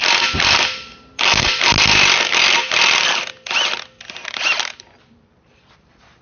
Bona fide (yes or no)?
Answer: yes